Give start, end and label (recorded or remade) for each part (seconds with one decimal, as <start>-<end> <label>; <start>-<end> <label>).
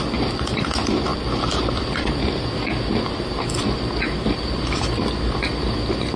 0.0-6.2 recorded